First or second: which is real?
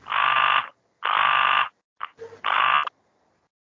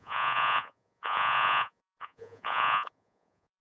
first